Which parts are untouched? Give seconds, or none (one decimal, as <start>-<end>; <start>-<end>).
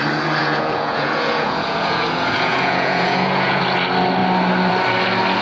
0.0-0.4; 3.6-5.4